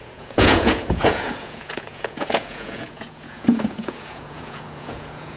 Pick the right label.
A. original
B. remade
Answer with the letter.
B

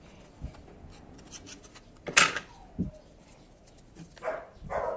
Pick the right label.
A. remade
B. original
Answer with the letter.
B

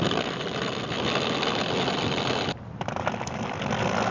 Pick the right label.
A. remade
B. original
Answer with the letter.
B